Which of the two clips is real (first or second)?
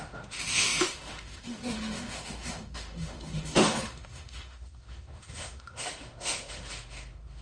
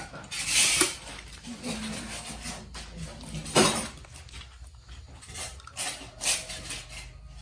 second